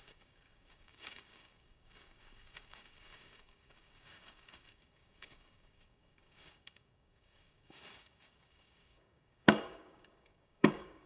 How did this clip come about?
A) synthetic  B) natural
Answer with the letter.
A